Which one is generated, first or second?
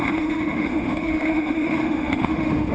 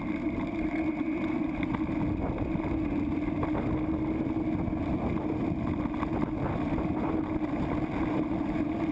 first